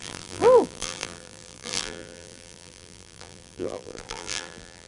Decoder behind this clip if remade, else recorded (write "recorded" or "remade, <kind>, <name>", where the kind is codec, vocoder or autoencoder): remade, vocoder, BigVGAN v2